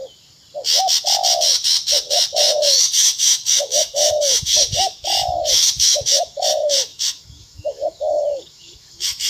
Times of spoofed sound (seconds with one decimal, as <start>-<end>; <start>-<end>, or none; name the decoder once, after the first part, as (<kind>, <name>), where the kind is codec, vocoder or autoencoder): 2.8-9.3 (autoencoder, DAC-VAE)